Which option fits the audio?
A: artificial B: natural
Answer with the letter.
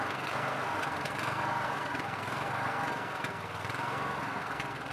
A